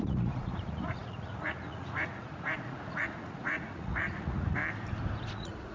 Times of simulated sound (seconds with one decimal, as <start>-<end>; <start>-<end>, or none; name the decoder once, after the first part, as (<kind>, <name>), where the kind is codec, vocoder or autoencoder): 0.0-4.6 (vocoder, Vocos); 5.3-5.7